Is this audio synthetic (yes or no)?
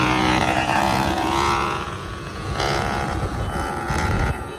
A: yes